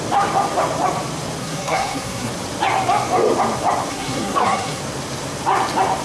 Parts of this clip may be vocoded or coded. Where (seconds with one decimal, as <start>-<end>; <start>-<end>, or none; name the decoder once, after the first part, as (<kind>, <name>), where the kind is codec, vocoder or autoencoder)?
1.4-2.3 (codec, SNAC); 3.9-4.8